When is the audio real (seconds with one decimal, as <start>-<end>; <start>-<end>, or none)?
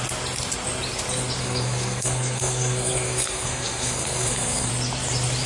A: 0.0-1.4; 4.7-5.5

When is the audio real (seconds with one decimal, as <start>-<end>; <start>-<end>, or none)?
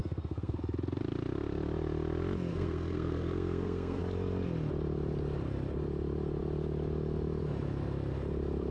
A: 0.6-2.5; 4.0-8.7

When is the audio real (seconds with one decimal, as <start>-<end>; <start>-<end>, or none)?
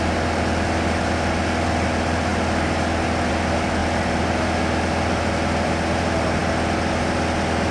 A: 0.0-7.7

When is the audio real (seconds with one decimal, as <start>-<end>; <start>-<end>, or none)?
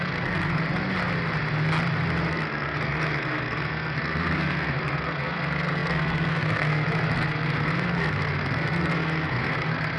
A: 0.6-2.3